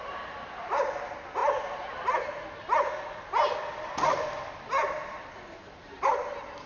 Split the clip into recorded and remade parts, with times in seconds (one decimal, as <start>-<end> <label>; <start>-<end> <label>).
0.0-6.7 recorded